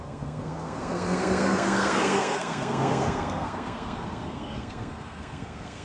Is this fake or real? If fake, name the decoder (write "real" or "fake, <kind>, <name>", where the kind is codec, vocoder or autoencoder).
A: fake, codec, SNAC